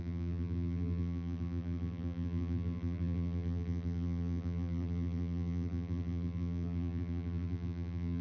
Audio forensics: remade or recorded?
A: remade